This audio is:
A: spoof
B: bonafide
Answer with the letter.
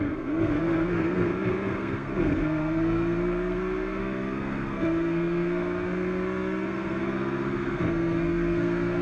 A